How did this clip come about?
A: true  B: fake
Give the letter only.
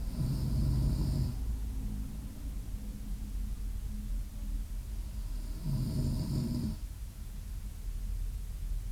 A